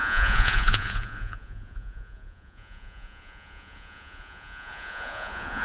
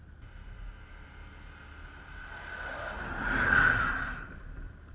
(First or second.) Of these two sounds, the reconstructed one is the first